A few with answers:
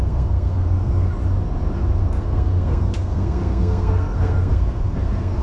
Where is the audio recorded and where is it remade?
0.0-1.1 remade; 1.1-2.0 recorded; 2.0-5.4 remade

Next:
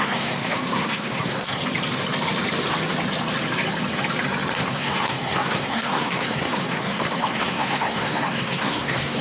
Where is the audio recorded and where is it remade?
0.0-1.6 remade; 1.6-4.6 recorded; 4.6-9.2 remade